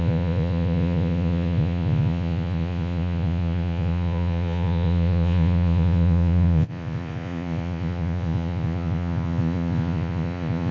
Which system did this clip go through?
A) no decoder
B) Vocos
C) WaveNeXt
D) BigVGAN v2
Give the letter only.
B